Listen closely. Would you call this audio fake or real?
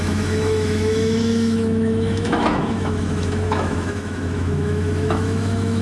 fake